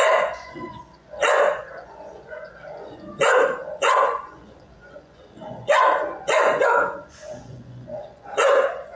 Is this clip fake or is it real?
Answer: fake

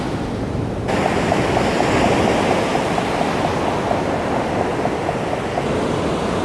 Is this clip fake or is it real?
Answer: real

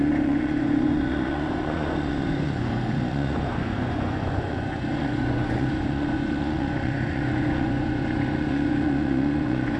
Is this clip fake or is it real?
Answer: fake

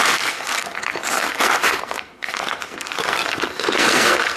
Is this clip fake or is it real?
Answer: fake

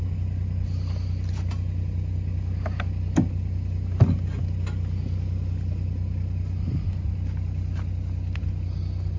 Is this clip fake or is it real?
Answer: real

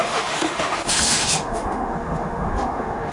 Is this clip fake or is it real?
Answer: fake